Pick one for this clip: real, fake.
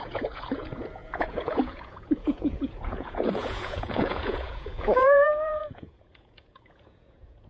fake